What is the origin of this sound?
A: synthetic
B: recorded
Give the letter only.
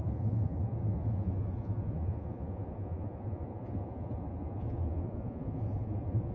A